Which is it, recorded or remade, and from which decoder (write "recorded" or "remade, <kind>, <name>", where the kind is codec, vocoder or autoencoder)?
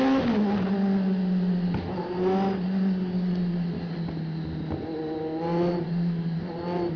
recorded